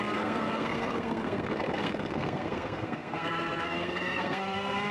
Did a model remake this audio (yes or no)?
yes